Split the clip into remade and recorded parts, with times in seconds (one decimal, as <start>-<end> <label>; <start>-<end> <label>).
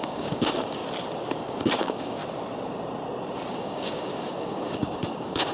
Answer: 0.0-0.8 remade; 0.8-1.8 recorded; 1.8-2.2 remade; 2.2-3.5 recorded; 3.5-5.5 remade